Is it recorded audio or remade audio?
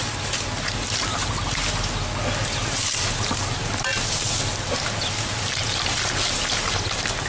recorded